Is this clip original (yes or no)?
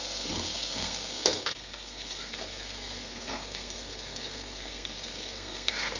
no